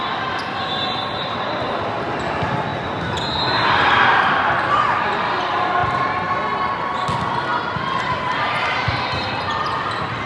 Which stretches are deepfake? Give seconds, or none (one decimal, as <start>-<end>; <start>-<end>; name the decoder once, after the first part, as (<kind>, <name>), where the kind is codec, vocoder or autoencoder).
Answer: none